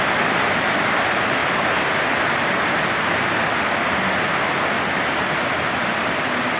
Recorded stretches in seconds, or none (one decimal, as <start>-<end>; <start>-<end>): 0.0-6.6